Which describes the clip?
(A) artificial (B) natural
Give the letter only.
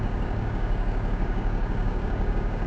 A